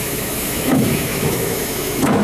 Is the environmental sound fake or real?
fake